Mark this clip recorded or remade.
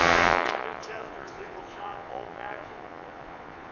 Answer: remade